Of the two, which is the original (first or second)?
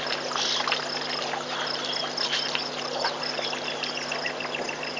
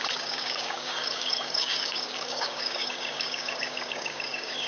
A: first